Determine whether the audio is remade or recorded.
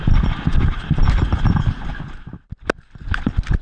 recorded